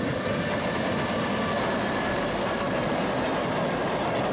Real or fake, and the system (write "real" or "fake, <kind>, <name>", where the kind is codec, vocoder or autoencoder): real